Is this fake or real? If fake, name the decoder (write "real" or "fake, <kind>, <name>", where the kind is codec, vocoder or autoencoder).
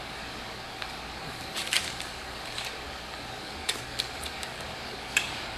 fake, codec, DAC